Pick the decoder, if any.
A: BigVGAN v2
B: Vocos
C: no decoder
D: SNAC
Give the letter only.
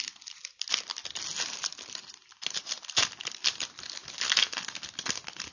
C